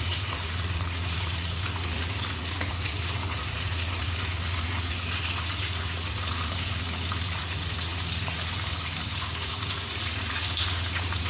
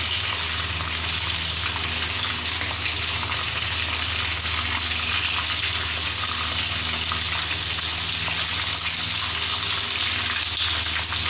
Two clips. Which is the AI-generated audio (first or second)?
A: first